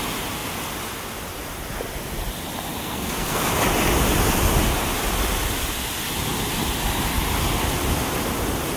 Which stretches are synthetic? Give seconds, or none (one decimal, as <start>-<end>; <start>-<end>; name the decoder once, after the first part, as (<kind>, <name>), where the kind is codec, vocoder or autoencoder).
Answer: 2.8-3.5 (codec, SNAC)